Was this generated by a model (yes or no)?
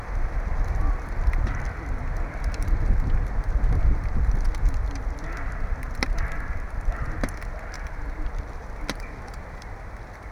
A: yes